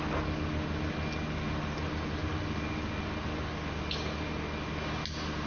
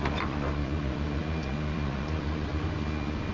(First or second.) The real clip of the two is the first